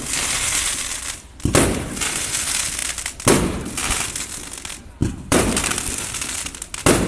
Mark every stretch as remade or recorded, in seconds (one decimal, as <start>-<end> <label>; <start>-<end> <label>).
0.0-5.0 recorded; 5.0-5.9 remade; 5.9-7.1 recorded